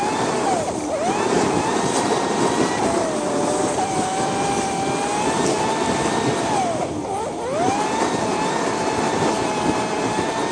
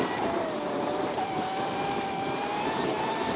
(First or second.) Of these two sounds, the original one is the first